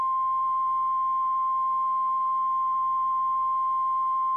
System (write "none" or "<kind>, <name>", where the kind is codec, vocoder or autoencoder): none